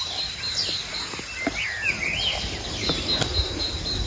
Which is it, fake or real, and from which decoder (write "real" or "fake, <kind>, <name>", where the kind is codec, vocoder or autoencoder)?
real